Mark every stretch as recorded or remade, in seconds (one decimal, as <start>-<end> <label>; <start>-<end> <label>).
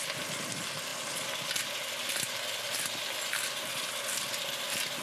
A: 0.0-5.0 recorded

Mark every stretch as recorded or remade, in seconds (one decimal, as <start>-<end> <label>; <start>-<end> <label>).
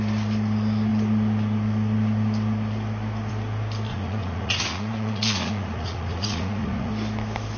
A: 0.0-3.9 recorded; 3.9-6.9 remade; 6.9-7.6 recorded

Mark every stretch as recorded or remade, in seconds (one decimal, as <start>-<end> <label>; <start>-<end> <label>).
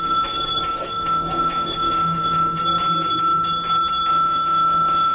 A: 0.0-2.6 remade; 2.6-4.1 recorded; 4.1-5.1 remade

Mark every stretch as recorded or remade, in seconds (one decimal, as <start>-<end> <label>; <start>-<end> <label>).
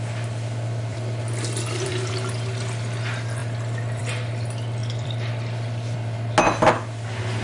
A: 0.0-0.9 recorded; 0.9-2.1 remade; 2.1-4.8 recorded; 4.8-5.3 remade; 5.3-7.4 recorded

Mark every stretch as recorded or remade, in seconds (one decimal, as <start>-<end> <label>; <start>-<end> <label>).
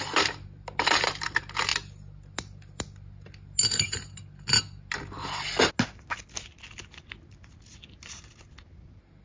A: 0.0-9.2 recorded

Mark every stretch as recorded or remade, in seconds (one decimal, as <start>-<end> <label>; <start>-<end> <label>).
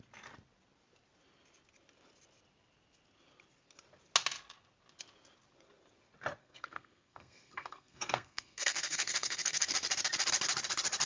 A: 0.0-6.4 recorded; 6.4-9.7 remade; 9.7-11.1 recorded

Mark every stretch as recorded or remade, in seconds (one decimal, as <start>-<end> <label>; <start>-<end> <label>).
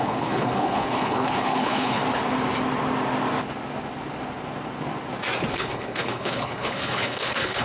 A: 0.0-2.0 remade; 2.0-5.5 recorded; 5.5-7.6 remade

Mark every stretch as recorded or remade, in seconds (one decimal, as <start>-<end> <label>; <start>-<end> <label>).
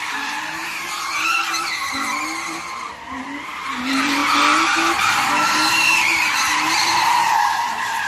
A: 0.0-8.1 remade